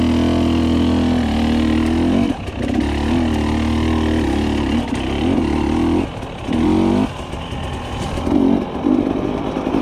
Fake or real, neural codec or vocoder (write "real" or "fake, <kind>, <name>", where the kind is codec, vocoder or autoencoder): real